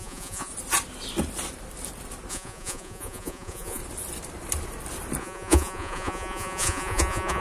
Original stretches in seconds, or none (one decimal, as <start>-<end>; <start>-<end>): 0.5-2.3; 3.8-5.2